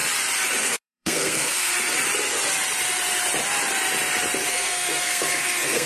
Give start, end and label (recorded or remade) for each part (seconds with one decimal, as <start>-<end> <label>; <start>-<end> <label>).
0.0-0.6 recorded; 0.6-1.7 remade; 1.7-4.5 recorded; 4.5-5.9 remade